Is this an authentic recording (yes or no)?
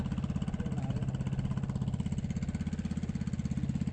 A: yes